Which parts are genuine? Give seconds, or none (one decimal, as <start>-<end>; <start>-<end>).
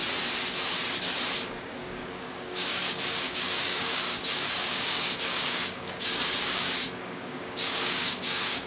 0.0-1.5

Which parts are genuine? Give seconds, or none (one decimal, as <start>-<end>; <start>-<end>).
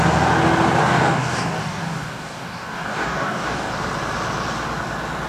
0.0-0.8; 3.7-5.3